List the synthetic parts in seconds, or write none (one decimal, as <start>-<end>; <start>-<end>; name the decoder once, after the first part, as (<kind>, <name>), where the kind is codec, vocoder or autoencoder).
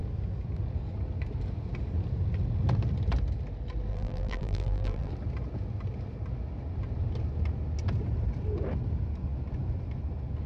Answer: 3.9-5.1 (vocoder, BigVGAN v2)